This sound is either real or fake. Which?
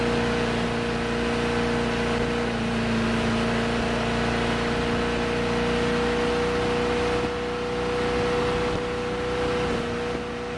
real